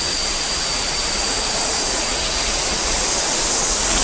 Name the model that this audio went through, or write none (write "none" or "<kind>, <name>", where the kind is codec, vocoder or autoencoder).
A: vocoder, Vocos